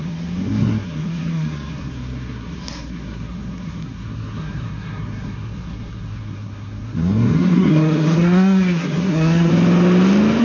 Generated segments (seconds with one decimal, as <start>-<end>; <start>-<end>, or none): 0.0-9.5